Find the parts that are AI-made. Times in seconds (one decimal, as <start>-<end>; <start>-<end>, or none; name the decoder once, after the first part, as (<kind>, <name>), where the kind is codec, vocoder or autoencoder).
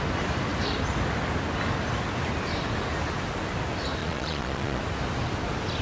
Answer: 4.0-4.8 (vocoder, Vocos)